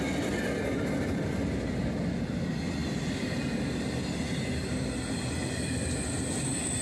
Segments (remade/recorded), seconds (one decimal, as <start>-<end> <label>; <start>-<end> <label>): 0.0-6.8 recorded